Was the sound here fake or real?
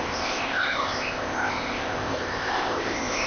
fake